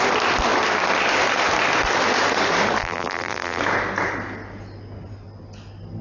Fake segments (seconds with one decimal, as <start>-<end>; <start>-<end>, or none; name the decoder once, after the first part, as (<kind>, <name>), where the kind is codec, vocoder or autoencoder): 2.8-3.6 (vocoder, BigVGAN v2)